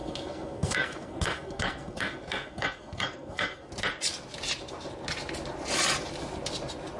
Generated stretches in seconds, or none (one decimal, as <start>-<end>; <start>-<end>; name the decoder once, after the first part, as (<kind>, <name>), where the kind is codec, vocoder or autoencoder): 0.0-3.7 (codec, SNAC)